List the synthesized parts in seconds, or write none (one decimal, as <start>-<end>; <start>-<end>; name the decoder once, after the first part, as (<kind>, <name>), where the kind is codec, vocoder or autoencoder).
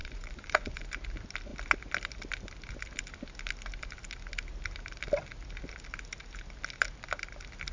0.0-0.8 (vocoder, Vocos)